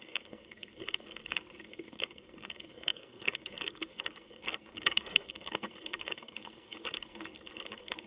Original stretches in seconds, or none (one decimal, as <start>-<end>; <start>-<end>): none